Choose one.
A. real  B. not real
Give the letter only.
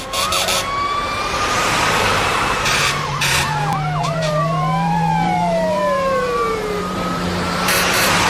B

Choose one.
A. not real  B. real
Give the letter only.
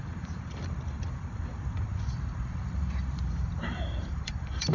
A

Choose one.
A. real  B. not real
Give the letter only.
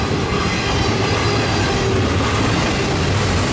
A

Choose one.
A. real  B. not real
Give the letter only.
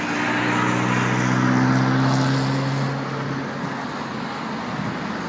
A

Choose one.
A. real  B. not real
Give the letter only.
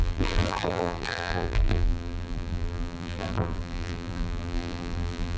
B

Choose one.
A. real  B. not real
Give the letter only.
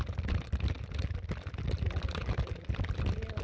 A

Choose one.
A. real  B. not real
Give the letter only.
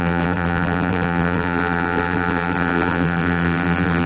B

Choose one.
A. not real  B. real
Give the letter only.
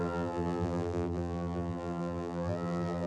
A